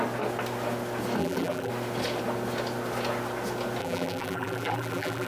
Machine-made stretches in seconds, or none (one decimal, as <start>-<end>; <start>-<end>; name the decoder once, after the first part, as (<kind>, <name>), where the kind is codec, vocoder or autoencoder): 1.2-1.7 (vocoder, BigVGAN v2); 3.8-5.3